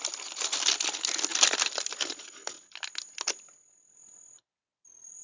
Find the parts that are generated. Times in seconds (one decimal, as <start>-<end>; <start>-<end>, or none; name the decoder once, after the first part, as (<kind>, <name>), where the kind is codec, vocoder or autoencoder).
none